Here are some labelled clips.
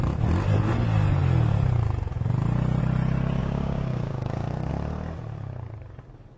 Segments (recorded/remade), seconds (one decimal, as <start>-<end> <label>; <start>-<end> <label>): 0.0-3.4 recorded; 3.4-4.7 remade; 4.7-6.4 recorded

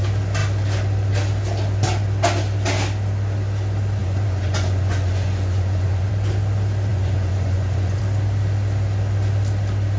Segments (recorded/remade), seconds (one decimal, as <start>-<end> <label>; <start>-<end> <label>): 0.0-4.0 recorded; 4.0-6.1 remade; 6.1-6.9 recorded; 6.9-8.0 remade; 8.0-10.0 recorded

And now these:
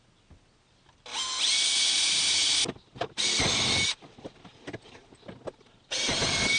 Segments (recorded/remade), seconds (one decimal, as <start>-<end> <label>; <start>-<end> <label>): 0.0-6.6 recorded

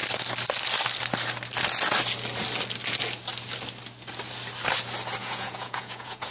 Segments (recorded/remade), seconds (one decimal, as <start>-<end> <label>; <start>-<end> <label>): 0.0-5.2 recorded; 5.2-6.3 remade